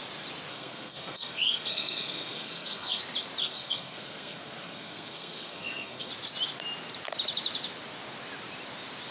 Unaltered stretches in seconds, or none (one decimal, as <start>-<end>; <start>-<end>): 0.0-0.5; 3.0-3.4; 6.1-9.1